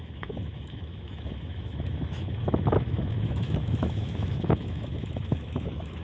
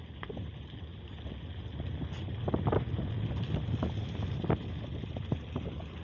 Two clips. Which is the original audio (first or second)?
second